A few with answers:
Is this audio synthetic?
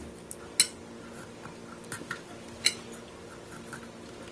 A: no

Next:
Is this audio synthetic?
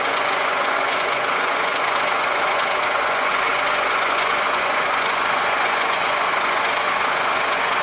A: yes